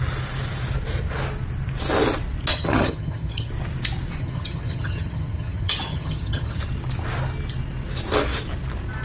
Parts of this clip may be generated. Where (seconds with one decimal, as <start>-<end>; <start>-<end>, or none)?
2.5-3.5; 4.2-6.6